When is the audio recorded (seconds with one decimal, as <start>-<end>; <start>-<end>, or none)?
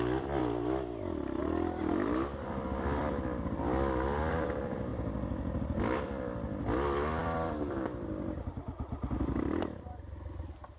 0.4-1.4; 3.0-4.3; 4.9-5.6